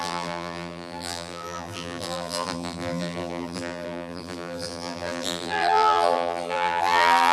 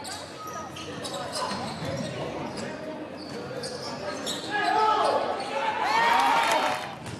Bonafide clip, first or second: second